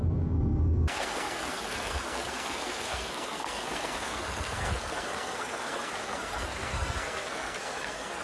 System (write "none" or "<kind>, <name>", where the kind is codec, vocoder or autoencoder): codec, SNAC